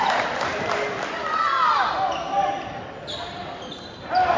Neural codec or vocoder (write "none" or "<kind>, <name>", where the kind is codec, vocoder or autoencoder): none